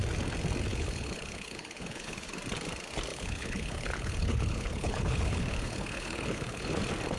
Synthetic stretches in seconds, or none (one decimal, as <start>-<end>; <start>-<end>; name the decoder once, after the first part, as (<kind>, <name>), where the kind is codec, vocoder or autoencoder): 0.7-2.3 (codec, HILCodec); 3.1-6.8